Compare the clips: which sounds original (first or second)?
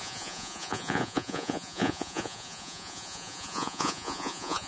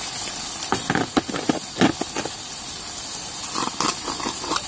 second